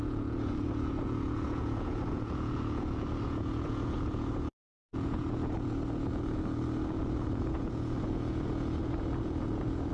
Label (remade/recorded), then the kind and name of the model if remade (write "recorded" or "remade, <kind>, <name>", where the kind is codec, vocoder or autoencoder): remade, vocoder, Vocos